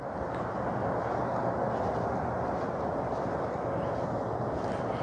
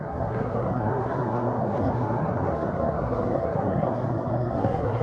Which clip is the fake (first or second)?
second